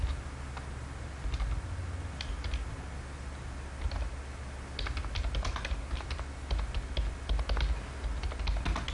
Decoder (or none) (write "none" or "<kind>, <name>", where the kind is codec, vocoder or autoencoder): none